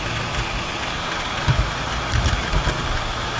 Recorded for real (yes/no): yes